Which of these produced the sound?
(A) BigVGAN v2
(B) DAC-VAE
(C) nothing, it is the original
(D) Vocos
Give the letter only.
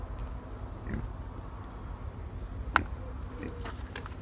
C